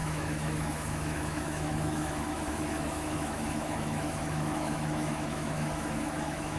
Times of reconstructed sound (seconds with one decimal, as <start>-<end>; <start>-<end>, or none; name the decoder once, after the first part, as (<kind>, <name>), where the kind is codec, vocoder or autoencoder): 0.0-6.6 (autoencoder, DAC-VAE)